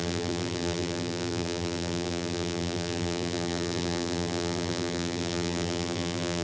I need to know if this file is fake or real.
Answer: fake